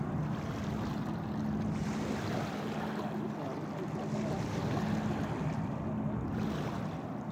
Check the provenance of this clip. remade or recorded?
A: recorded